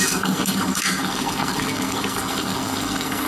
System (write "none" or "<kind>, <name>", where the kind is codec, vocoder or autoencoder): codec, SNAC